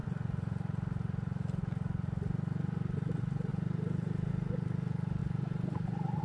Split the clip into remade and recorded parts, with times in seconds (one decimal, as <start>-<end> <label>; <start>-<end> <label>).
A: 0.0-3.5 recorded; 3.5-4.3 remade; 4.3-5.2 recorded; 5.2-6.2 remade